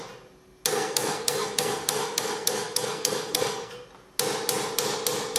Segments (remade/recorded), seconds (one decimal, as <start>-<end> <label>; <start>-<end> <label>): 0.0-0.7 recorded; 0.7-3.7 remade; 3.7-5.4 recorded